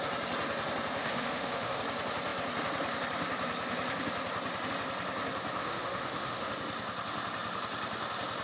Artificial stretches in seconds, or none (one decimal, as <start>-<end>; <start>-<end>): 1.0-1.8; 5.6-6.5